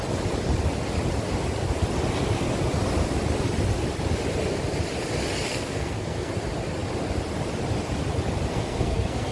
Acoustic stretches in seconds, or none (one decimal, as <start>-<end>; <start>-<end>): 0.0-5.5; 6.3-8.5

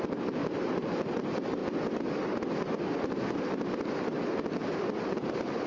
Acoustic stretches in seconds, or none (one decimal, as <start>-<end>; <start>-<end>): 0.4-1.0; 1.6-5.0

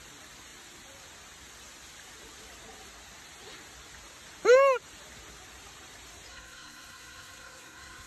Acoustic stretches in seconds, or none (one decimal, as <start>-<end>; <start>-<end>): 0.0-6.3

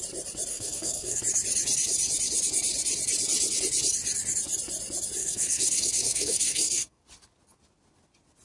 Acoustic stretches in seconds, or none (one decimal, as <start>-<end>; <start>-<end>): 0.0-0.5; 1.2-5.2; 7.0-8.4

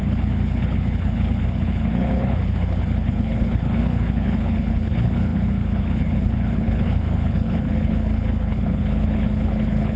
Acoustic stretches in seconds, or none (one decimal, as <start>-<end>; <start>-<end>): none

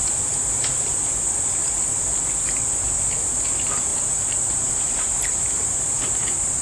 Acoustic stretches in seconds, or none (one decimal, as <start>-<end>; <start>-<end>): 0.0-3.9

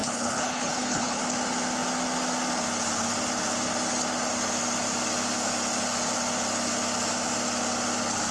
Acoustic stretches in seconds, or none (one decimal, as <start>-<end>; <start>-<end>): 1.2-8.3